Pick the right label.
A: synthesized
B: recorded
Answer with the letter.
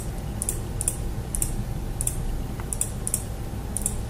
B